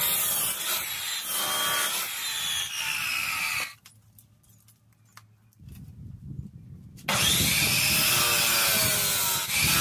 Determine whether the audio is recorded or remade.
recorded